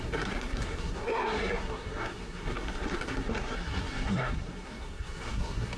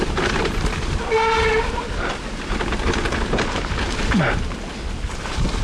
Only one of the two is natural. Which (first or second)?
second